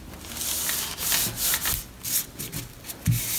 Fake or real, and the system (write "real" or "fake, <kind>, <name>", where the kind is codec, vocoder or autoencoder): real